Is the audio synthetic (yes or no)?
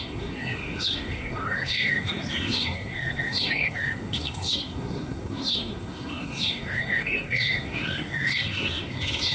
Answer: yes